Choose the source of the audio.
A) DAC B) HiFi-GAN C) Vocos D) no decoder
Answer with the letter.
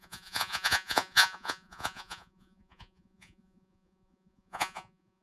C